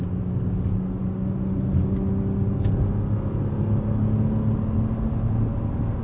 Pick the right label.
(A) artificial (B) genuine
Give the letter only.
B